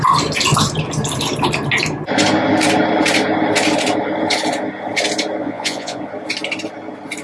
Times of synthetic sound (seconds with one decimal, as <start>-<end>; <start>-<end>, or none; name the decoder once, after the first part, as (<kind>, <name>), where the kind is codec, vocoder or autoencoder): 5.4-6.0 (vocoder, Vocos)